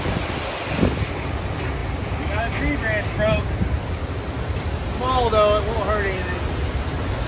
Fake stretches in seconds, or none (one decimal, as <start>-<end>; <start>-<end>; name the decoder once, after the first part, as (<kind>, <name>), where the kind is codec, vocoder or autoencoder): none